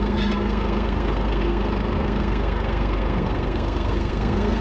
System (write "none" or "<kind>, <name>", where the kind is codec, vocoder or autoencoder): codec, SNAC